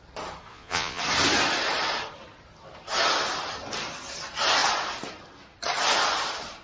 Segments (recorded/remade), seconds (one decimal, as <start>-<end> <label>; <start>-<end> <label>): 0.0-0.5 recorded; 0.5-1.0 remade; 1.0-6.6 recorded